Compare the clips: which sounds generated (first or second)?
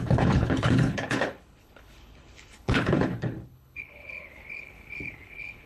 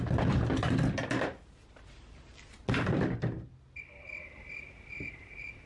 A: first